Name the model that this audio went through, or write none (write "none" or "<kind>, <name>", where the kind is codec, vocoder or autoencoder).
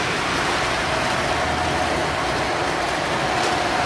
none